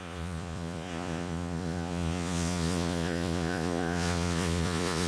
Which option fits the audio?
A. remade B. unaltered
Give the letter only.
A